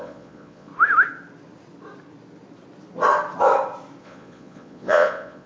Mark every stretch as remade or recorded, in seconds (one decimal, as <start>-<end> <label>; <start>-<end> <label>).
0.0-0.7 remade; 0.7-4.0 recorded; 4.0-5.5 remade